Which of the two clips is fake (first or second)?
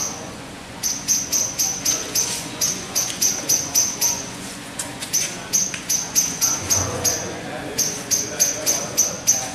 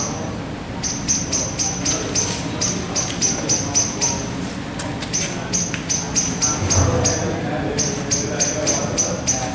first